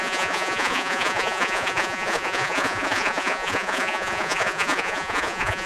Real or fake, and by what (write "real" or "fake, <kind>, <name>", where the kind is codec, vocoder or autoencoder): fake, vocoder, Vocos